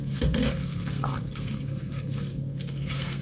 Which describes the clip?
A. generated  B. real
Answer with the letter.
A